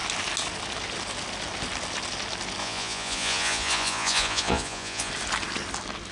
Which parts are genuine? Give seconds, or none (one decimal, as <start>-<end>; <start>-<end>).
0.0-2.6; 5.1-6.1